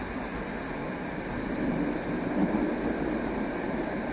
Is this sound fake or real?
real